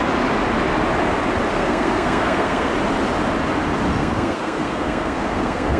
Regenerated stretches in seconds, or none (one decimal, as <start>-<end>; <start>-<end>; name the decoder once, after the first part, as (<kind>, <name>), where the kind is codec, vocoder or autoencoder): 1.5-2.7 (codec, SNAC); 4.0-5.8